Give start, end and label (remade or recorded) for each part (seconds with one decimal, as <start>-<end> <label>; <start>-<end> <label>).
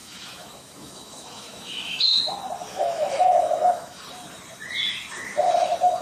0.0-2.2 remade; 2.2-2.7 recorded; 2.7-4.0 remade; 4.0-6.0 recorded